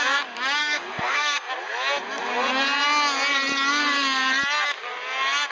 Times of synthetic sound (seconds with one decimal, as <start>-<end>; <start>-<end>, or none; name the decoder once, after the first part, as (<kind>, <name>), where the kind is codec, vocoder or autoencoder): 0.6-1.5 (codec, SNAC)